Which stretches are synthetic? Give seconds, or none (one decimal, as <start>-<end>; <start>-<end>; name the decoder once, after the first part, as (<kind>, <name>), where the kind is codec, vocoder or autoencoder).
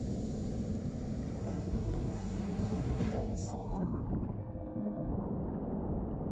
1.4-4.0 (codec, SNAC); 4.4-5.1